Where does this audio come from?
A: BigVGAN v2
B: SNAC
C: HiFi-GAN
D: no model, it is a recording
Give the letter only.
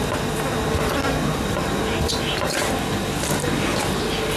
D